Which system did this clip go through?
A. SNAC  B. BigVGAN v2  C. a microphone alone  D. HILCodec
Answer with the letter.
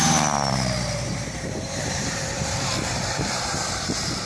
B